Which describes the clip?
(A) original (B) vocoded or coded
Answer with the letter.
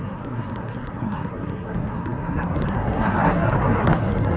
B